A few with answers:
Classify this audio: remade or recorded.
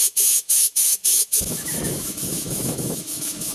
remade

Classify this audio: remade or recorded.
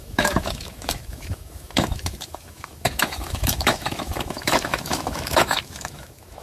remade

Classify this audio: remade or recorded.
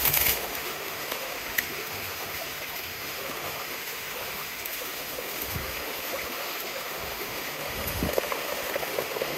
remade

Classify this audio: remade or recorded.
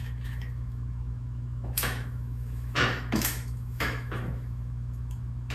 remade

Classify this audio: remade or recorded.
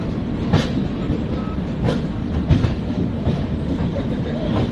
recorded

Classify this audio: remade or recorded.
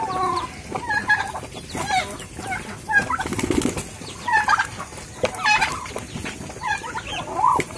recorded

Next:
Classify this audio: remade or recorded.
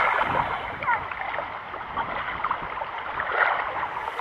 recorded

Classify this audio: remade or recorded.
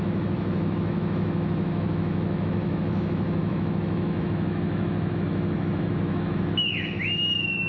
remade